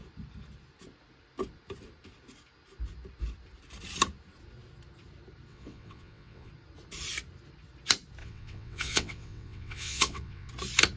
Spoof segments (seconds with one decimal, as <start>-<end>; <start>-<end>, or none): 5.5-6.5; 8.2-10.5